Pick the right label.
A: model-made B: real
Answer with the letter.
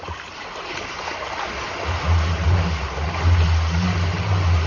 B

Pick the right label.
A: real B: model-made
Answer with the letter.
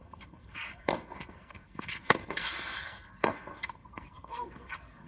B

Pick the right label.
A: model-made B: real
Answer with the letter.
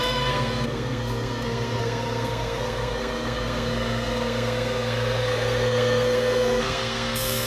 A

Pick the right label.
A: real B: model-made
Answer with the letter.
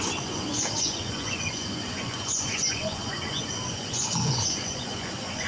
B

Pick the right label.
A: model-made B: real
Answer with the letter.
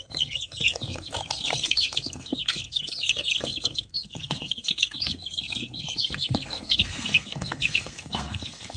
A